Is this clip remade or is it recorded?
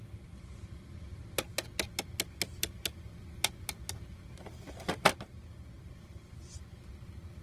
recorded